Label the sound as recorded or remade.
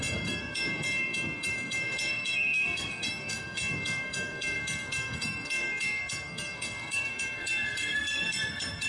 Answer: remade